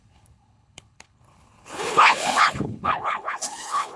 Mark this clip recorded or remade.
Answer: remade